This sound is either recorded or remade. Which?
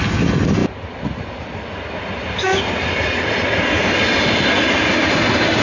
recorded